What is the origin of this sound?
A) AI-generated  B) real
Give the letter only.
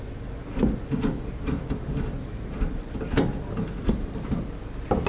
B